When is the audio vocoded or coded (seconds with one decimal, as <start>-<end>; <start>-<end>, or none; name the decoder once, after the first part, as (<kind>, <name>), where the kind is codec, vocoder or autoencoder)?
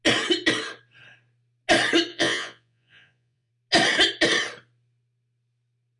2.1-3.5 (vocoder, Vocos)